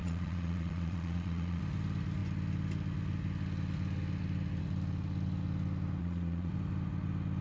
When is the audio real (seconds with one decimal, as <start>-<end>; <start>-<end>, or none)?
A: 1.6-6.0; 6.5-7.4